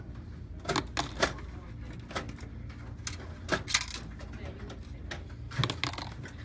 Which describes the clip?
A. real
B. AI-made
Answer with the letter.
A